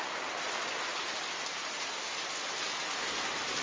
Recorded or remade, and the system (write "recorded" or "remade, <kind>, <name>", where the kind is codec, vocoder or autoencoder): recorded